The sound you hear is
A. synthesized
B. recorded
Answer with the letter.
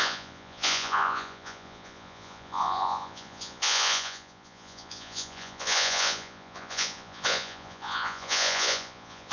A